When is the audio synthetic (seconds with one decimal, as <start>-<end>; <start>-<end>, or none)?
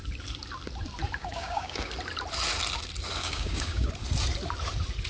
1.2-1.9; 3.2-3.9